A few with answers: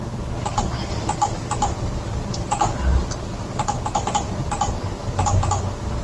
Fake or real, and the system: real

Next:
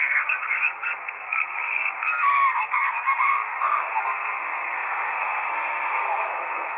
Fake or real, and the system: fake, codec, SNAC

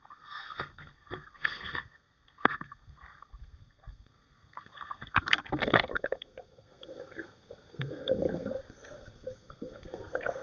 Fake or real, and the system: fake, codec, SNAC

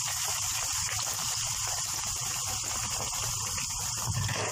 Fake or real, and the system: real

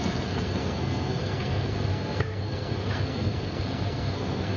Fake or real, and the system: fake, codec, SNAC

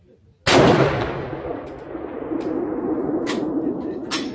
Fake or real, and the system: real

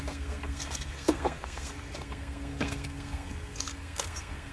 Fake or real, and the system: fake, codec, SNAC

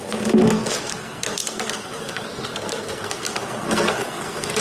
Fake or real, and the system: fake, codec, SNAC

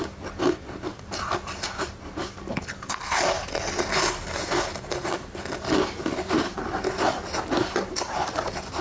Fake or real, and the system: real